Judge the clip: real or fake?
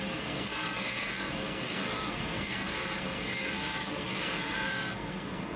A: fake